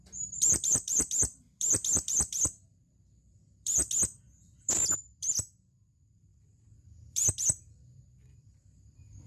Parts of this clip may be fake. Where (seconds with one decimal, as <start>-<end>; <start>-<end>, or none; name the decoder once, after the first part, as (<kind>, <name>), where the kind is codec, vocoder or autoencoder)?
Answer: 0.0-3.8 (vocoder, BigVGAN v2); 4.5-9.3